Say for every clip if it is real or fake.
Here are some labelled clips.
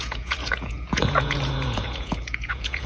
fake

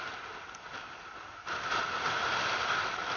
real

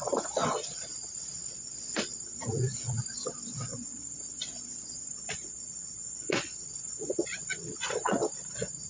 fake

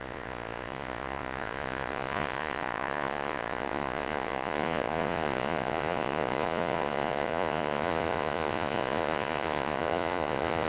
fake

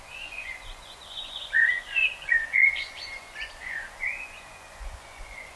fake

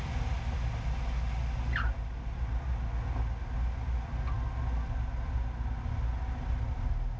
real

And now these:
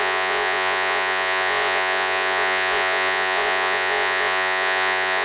fake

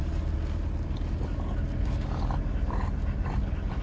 real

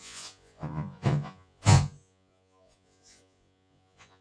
fake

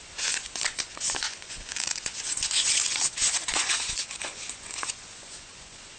fake